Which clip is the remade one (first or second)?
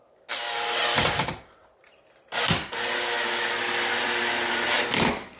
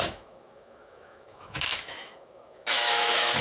second